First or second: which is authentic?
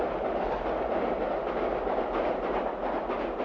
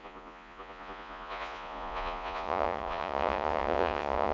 first